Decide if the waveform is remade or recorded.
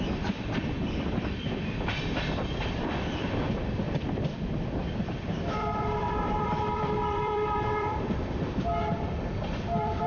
remade